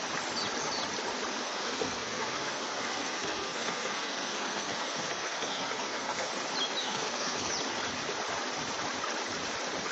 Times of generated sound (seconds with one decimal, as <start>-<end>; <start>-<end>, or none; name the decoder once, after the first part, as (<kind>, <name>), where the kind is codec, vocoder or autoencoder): 1.4-6.3 (codec, SNAC); 6.8-7.5